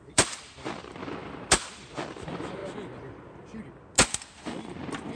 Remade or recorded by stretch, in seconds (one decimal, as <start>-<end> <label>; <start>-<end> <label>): 0.0-2.6 remade; 2.6-5.1 recorded

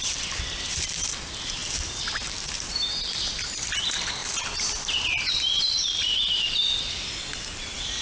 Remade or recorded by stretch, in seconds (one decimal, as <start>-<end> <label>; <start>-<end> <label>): 0.0-8.0 recorded

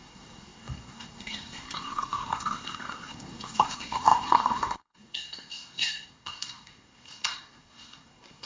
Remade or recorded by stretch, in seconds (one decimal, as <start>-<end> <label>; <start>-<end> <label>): 0.0-8.5 remade

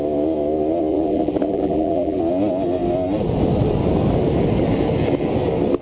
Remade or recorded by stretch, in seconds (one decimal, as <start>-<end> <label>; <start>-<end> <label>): 0.0-0.9 recorded; 0.9-2.2 remade; 2.2-5.8 recorded

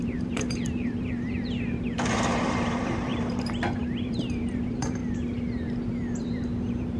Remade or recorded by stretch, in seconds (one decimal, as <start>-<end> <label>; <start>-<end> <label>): 0.0-5.0 remade; 5.0-6.2 recorded; 6.2-7.0 remade